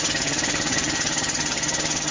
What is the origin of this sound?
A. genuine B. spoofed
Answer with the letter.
B